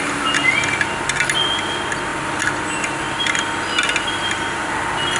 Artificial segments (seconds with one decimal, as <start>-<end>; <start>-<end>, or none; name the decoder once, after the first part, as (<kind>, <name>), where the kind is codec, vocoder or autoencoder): none